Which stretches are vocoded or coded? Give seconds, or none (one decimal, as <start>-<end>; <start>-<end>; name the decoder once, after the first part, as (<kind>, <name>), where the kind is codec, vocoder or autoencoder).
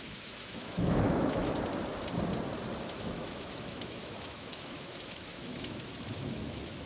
0.0-1.5 (autoencoder, DAC-VAE); 2.8-6.9